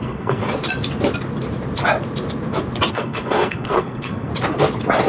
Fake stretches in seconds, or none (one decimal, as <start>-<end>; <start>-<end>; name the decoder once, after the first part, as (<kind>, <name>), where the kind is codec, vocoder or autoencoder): 0.0-0.4 (codec, SNAC); 2.9-4.3